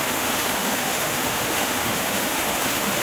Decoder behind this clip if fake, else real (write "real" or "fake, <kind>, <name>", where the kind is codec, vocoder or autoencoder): fake, autoencoder, DAC-VAE